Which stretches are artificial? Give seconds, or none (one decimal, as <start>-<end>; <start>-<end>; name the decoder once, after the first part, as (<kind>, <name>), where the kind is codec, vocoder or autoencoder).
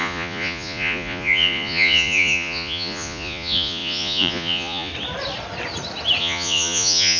0.0-4.9 (vocoder, Vocos); 6.2-7.2